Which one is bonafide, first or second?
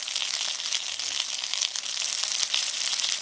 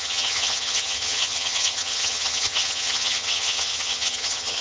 first